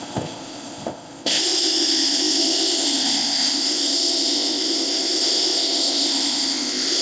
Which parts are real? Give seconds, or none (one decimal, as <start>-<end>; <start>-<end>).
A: none